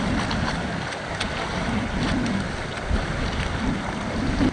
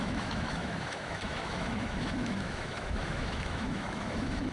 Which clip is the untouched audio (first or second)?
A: first